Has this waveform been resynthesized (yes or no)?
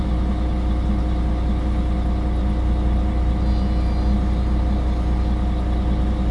no